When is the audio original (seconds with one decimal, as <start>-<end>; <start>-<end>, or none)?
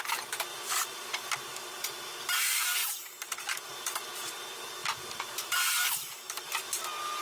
0.0-0.5; 1.1-2.8; 3.4-4.8; 6.8-7.2